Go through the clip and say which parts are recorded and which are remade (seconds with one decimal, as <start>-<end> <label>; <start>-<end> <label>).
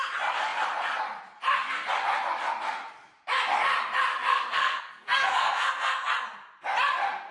0.0-4.1 recorded; 4.1-6.1 remade; 6.1-7.3 recorded